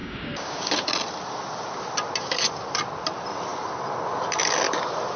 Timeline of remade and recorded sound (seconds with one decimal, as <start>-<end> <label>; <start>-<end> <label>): 0.0-0.7 remade; 0.7-5.2 recorded